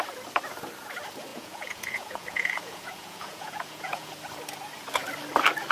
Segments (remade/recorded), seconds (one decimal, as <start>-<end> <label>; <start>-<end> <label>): 0.0-1.3 recorded; 1.3-4.1 remade; 4.1-5.7 recorded